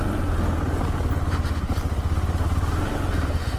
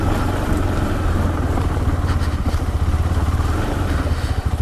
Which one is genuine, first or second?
first